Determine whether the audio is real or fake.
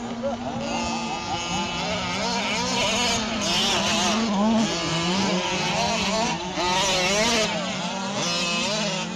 real